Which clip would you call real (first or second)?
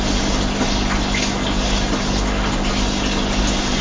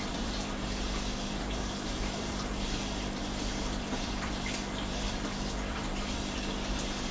first